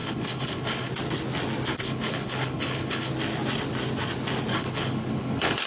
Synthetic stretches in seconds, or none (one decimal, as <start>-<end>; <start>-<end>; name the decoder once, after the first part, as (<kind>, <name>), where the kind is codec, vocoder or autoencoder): 0.0-0.9 (codec, HILCodec); 1.7-3.1; 4.5-5.7